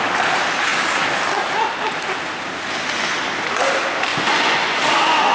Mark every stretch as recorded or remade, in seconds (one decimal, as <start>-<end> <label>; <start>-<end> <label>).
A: 0.0-4.1 recorded; 4.1-4.8 remade; 4.8-5.3 recorded